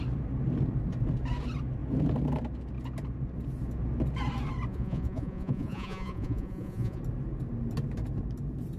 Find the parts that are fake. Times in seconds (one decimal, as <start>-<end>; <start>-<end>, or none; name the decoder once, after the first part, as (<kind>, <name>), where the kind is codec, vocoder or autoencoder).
4.7-7.0 (vocoder, Vocos)